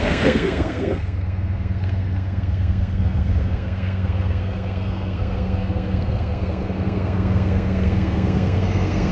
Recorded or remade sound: remade